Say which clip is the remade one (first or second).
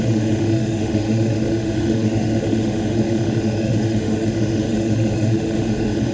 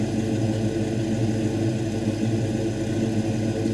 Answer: first